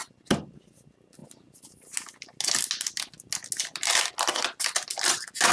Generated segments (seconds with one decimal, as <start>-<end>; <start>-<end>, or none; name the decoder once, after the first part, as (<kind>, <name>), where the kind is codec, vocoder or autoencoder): none